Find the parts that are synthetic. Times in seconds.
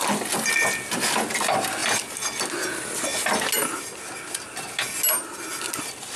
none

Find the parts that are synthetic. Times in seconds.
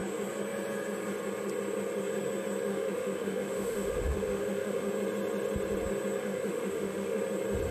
2.7-4.9 (autoencoder, DAC-VAE); 6.2-7.2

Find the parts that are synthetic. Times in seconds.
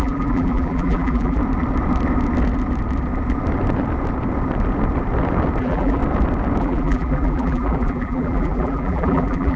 0.0-1.4 (vocoder, BigVGAN v2); 5.6-6.0; 6.6-9.6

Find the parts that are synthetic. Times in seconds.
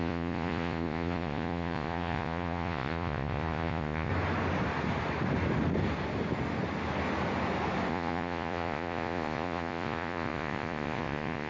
0.0-4.1 (vocoder, Vocos); 7.9-11.5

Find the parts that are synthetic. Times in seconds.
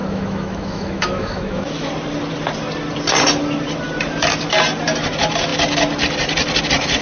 0.0-1.9 (autoencoder, DAC-VAE)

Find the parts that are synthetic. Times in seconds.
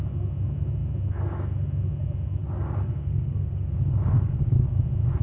2.4-4.8 (codec, DAC)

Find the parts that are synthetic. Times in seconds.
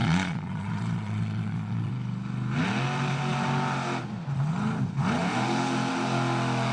0.0-1.9 (vocoder, Vocos)